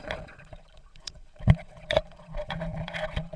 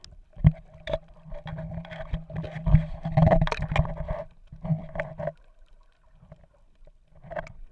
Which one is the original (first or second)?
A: second